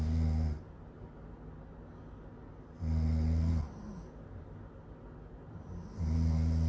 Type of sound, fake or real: real